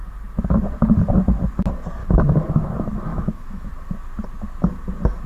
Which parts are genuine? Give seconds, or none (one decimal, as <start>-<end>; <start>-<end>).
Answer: 0.0-2.0; 2.6-3.1; 3.7-5.3